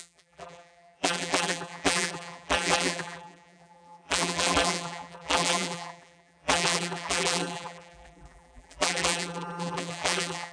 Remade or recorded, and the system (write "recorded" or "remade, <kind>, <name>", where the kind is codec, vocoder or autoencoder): remade, vocoder, BigVGAN v2